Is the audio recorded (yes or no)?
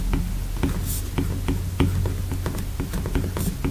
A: yes